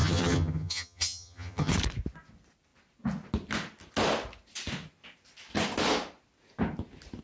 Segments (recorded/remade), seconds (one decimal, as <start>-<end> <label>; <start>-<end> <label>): 0.0-1.7 remade; 1.7-7.2 recorded